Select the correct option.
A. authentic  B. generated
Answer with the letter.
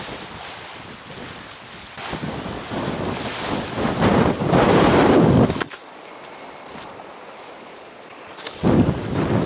A